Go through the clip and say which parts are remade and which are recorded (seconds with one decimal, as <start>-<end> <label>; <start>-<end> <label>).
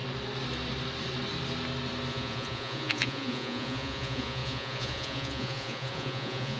0.0-2.1 recorded; 2.1-6.6 remade